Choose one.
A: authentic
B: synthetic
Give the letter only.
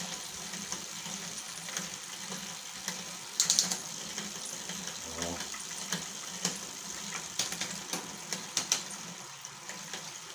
A